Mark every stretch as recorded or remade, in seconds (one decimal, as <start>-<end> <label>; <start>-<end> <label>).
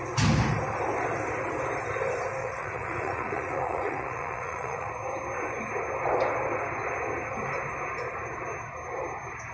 0.0-2.4 recorded; 2.4-4.9 remade; 4.9-9.5 recorded